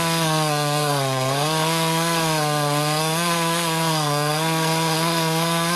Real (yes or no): no